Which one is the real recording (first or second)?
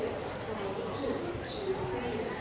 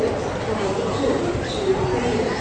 first